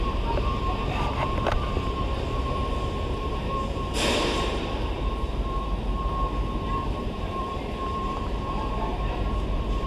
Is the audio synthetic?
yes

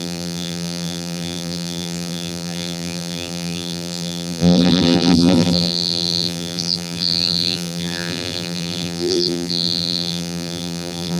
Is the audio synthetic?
yes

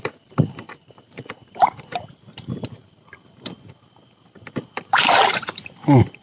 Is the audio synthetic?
yes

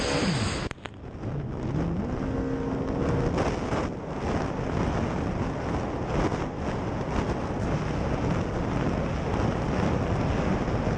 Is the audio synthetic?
no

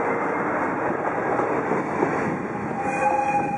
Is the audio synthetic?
no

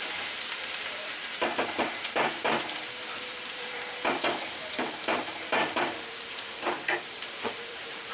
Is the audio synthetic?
yes